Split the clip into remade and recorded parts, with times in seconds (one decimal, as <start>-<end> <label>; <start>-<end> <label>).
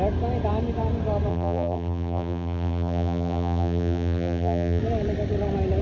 0.0-1.3 recorded; 1.3-4.8 remade; 4.8-5.8 recorded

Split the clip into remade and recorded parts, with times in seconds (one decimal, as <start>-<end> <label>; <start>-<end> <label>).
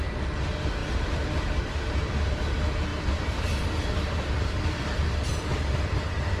0.0-0.8 recorded; 0.8-1.6 remade; 1.6-2.9 recorded; 2.9-5.1 remade; 5.1-6.4 recorded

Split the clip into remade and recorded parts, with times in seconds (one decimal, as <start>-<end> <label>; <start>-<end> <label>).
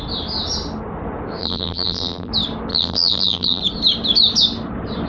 0.0-1.4 recorded; 1.4-2.3 remade; 2.3-2.7 recorded; 2.7-3.6 remade; 3.6-5.1 recorded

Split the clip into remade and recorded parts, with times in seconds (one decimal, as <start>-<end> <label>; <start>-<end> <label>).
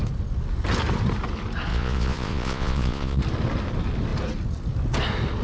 0.0-1.7 recorded; 1.7-3.2 remade; 3.2-5.4 recorded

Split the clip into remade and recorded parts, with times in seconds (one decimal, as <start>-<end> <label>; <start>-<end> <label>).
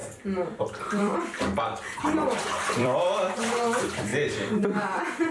0.0-0.6 recorded; 0.6-1.1 remade; 1.1-2.0 recorded; 2.0-4.1 remade; 4.1-5.3 recorded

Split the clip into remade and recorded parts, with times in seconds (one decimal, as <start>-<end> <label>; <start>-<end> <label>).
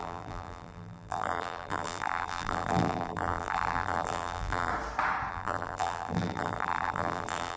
0.0-4.7 remade; 4.7-5.3 recorded; 5.3-7.6 remade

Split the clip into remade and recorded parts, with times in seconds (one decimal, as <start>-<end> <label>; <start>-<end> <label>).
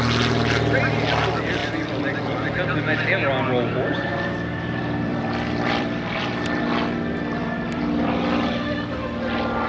0.0-1.6 recorded; 1.6-2.2 remade; 2.2-4.1 recorded; 4.1-6.6 remade; 6.6-7.4 recorded; 7.4-8.2 remade; 8.2-9.7 recorded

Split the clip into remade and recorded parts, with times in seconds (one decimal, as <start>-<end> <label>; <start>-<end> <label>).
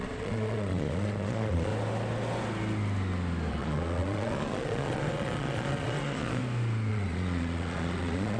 0.0-1.7 remade; 1.7-3.5 recorded; 3.5-6.4 remade; 6.4-6.9 recorded; 6.9-8.4 remade